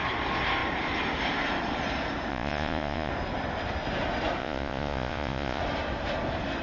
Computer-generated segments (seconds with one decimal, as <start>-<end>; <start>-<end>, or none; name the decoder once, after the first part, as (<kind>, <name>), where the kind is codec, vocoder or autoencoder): 2.3-3.1 (vocoder, Vocos); 4.4-5.6

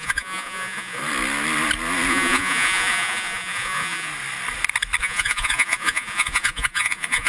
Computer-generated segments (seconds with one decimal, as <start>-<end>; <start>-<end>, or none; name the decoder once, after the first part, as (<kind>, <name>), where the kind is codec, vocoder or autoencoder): 0.0-1.0 (vocoder, Vocos); 2.1-4.1; 5.0-7.3